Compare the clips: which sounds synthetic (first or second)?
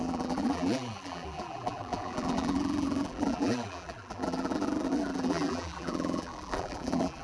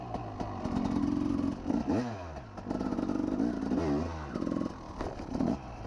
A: first